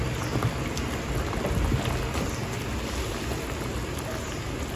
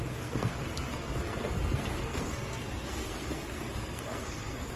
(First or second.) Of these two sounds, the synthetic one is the second